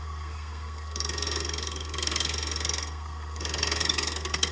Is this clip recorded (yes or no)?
no